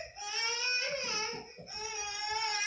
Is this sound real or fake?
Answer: real